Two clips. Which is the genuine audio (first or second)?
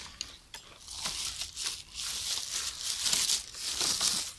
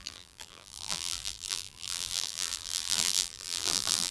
first